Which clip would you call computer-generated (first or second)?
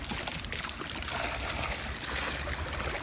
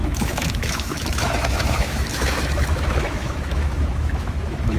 second